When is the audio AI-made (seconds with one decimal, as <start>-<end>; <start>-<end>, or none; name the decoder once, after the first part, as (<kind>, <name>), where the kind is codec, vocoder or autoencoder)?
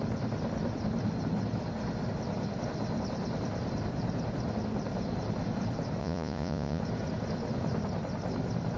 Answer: 6.0-6.8 (vocoder, Vocos)